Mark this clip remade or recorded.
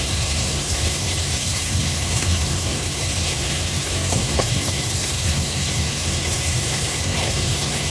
remade